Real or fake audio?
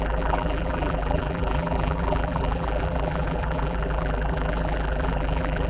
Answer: fake